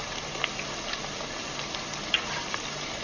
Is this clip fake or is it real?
real